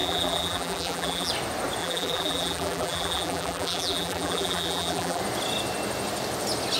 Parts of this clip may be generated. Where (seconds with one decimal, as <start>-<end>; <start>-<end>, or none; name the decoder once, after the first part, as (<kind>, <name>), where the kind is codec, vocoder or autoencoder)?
0.0-1.3 (vocoder, BigVGAN v2); 1.8-5.2